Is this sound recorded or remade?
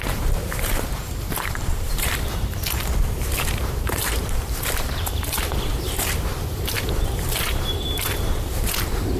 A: remade